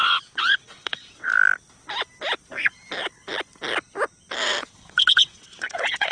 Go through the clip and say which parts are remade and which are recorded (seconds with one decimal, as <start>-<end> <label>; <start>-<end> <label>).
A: 0.0-1.3 remade; 1.3-4.7 recorded; 4.7-6.1 remade